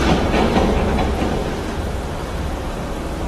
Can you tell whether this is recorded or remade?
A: remade